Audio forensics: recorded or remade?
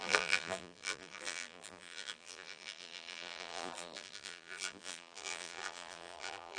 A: remade